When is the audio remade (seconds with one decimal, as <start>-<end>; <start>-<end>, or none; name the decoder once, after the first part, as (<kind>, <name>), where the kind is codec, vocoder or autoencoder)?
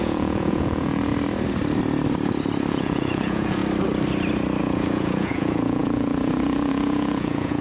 0.0-1.1 (vocoder, Vocos); 2.7-3.6; 4.6-7.6